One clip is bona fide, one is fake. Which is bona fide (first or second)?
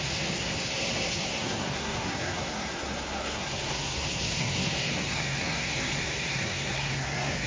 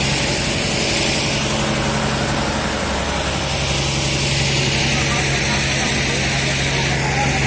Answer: second